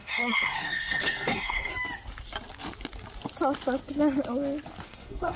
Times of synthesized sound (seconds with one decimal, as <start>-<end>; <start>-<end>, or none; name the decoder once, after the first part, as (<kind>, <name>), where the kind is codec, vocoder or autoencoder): 0.0-1.7 (codec, SNAC); 4.9-5.4